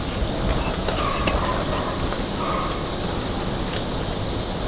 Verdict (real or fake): real